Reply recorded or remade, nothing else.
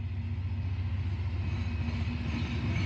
recorded